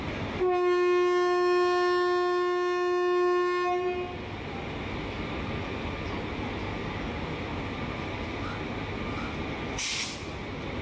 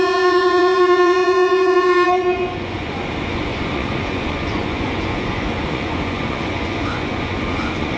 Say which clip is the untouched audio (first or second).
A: first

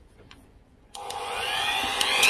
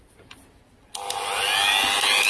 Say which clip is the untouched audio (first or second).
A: second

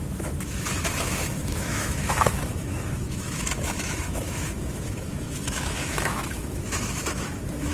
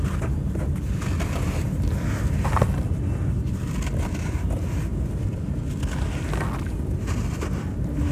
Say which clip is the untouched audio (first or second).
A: second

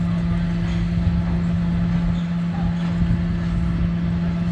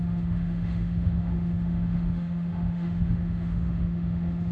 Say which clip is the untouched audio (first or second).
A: first